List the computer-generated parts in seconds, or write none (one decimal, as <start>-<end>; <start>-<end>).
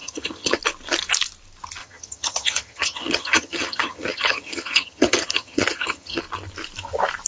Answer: 0.0-0.6; 1.8-6.2